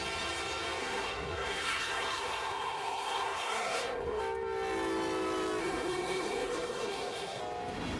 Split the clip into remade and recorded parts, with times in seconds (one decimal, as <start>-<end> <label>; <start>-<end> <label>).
0.0-0.8 recorded; 0.8-4.2 remade; 4.2-5.6 recorded; 5.6-7.4 remade; 7.4-8.0 recorded